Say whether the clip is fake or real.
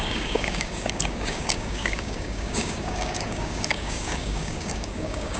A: fake